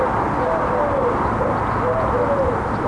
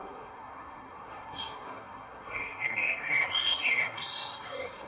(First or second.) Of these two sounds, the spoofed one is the second